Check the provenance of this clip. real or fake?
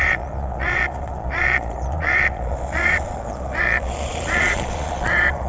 fake